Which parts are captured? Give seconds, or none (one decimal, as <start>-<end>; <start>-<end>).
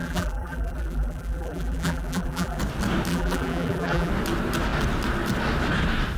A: 2.6-3.1; 4.1-6.2